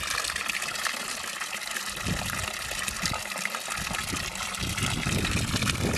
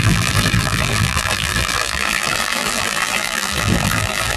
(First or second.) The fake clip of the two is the second